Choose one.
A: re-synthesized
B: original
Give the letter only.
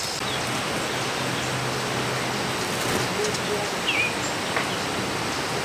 B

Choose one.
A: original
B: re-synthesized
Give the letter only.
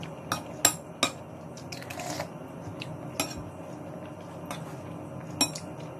A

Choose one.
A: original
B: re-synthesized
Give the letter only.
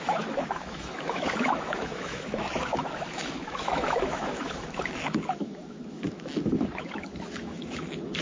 B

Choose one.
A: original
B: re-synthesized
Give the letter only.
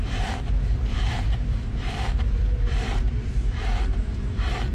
B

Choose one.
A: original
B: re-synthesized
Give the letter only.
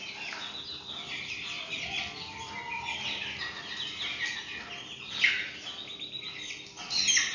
A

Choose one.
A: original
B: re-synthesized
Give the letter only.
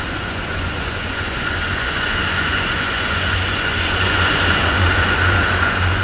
B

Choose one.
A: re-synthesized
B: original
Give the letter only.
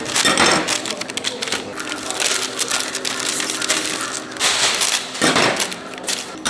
B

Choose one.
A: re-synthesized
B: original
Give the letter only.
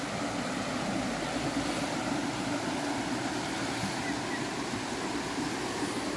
B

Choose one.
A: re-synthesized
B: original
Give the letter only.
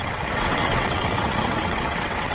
A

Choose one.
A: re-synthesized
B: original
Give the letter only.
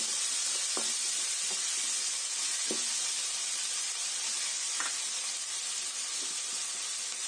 B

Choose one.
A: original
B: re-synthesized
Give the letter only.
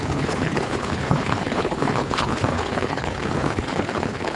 B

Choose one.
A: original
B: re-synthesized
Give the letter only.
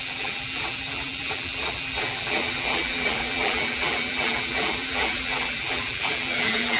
B